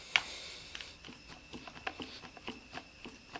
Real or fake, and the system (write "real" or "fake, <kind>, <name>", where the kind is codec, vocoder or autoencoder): real